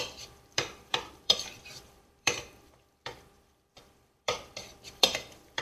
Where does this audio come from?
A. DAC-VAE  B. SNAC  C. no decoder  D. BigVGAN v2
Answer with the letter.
D